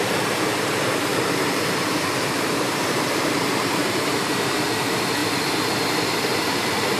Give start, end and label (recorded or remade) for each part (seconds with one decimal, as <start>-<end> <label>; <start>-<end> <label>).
0.0-5.2 remade; 5.2-6.2 recorded; 6.2-7.0 remade